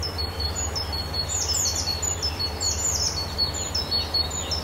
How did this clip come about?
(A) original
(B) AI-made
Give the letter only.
A